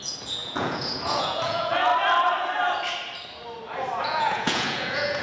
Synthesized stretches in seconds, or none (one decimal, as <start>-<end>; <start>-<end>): 0.0-1.9; 4.0-5.2